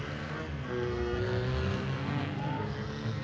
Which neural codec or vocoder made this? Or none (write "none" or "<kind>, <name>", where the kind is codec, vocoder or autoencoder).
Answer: codec, SNAC